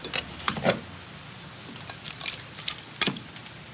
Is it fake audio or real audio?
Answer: real